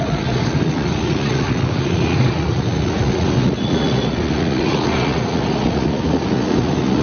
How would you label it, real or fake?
fake